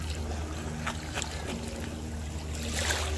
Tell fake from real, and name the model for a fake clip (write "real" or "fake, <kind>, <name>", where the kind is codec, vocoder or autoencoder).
real